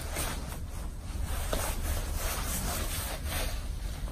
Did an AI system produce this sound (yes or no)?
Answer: no